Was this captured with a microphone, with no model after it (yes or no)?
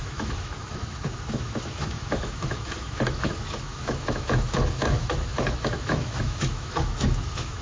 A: no